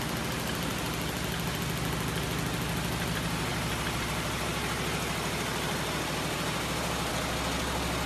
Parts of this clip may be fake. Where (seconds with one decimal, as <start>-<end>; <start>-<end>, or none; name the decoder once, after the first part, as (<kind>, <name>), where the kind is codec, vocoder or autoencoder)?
none